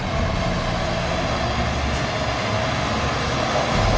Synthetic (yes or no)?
no